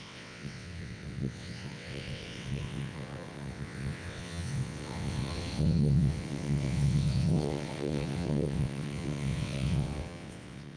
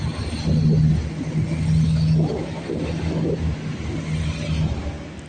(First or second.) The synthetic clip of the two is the first